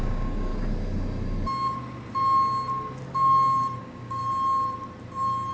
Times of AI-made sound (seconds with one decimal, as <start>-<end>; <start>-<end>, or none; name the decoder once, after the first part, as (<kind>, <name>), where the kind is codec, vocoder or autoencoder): 0.0-0.5 (codec, DAC); 3.8-4.2